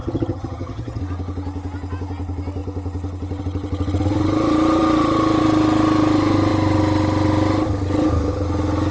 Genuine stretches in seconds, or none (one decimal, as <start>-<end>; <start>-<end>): 1.0-8.9